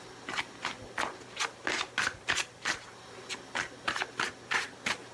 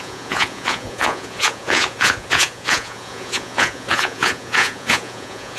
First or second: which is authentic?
first